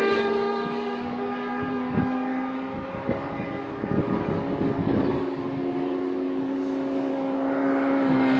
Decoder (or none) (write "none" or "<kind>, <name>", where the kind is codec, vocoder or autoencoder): codec, DAC